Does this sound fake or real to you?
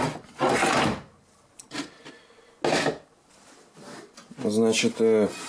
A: real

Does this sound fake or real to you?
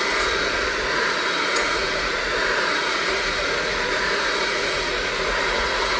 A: fake